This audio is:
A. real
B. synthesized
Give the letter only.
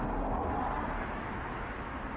A